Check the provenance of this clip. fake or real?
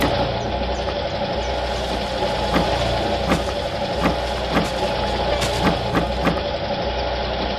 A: real